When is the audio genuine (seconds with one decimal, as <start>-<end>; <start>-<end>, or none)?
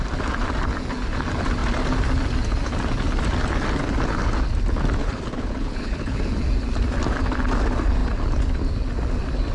0.0-5.0; 6.2-9.5